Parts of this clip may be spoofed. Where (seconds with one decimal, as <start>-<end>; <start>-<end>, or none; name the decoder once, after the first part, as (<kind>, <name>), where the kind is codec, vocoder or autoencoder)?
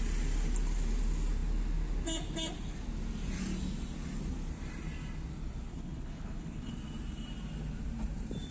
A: 5.7-6.7 (codec, HILCodec)